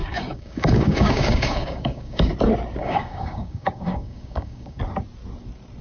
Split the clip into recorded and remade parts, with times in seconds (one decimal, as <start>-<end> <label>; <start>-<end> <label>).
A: 0.0-2.3 remade; 2.3-2.8 recorded; 2.8-4.8 remade; 4.8-5.8 recorded